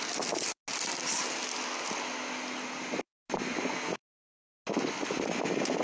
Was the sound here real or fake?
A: real